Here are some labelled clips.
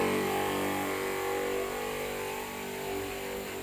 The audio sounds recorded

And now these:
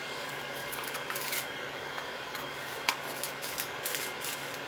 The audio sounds remade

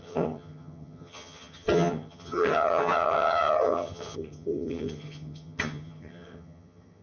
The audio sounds remade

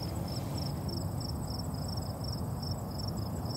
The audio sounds recorded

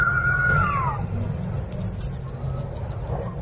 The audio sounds recorded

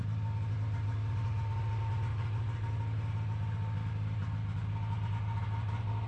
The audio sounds recorded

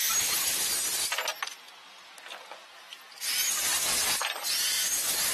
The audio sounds recorded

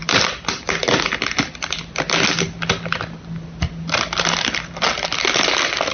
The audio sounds recorded